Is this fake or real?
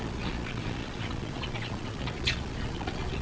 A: fake